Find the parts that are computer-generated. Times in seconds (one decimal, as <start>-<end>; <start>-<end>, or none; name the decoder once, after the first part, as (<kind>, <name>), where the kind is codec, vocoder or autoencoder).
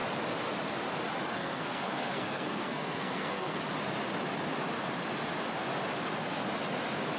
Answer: 1.3-3.6 (codec, SNAC)